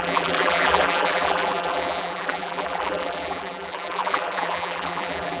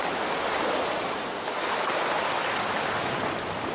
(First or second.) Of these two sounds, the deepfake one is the first